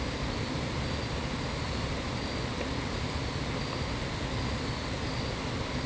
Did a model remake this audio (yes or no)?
no